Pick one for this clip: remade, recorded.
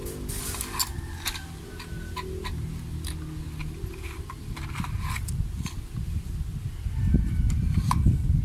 recorded